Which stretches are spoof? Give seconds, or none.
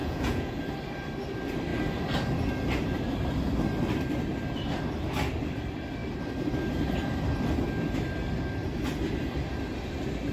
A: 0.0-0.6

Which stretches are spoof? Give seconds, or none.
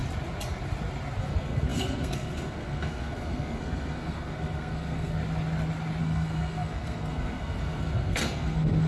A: 1.2-5.2; 6.0-8.9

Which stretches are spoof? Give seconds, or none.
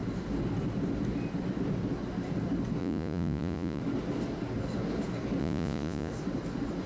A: 2.8-3.8; 5.4-6.1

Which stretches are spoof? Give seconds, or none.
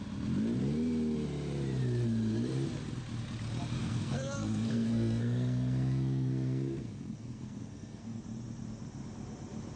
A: 3.8-8.2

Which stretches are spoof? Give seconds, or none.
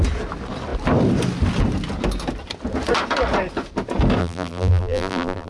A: 4.2-5.5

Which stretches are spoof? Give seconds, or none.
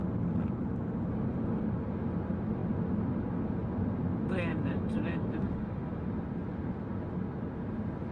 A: 4.5-6.1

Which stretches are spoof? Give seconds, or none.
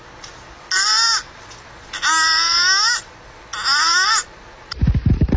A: none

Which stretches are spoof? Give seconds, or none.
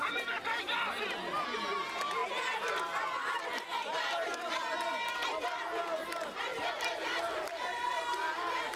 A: 2.2-5.1; 6.5-8.4